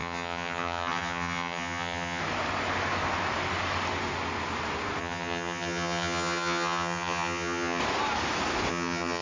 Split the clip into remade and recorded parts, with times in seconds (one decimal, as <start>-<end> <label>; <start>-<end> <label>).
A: 0.0-2.2 remade; 2.2-5.0 recorded; 5.0-7.8 remade; 7.8-8.7 recorded; 8.7-9.2 remade